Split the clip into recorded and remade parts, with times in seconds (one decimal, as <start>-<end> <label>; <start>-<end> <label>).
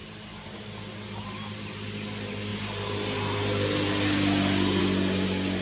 0.0-5.6 recorded